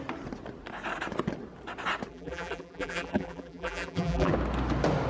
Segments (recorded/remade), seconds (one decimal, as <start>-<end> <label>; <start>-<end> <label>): 0.0-2.1 recorded; 2.1-4.3 remade; 4.3-5.1 recorded